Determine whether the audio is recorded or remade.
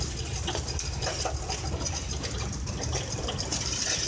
recorded